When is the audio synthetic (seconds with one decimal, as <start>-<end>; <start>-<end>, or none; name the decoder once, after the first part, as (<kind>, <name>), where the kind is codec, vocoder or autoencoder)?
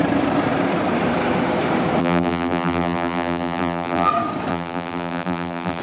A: 2.0-4.1 (vocoder, BigVGAN v2); 4.5-5.8